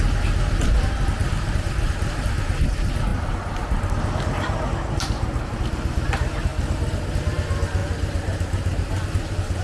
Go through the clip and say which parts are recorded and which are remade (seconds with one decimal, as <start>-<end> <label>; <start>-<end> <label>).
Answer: 0.0-1.2 recorded; 1.2-2.5 remade; 2.5-3.1 recorded; 3.1-3.9 remade; 3.9-7.8 recorded; 7.8-9.6 remade